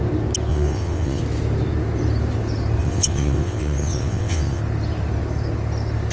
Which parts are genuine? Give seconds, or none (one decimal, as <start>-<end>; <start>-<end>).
0.0-0.5; 1.2-2.8; 4.6-6.1